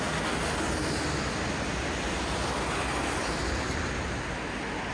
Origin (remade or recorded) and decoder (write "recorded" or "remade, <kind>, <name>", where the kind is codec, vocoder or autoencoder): recorded